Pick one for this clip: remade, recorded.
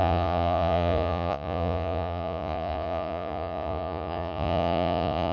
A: remade